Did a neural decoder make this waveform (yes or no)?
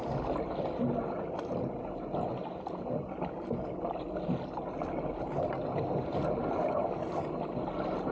no